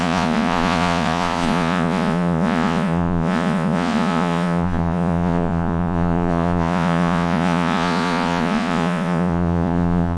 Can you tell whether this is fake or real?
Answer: fake